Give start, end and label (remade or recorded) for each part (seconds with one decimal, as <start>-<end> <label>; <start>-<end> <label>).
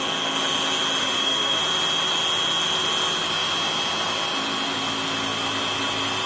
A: 0.0-1.0 recorded; 1.0-1.6 remade; 1.6-6.3 recorded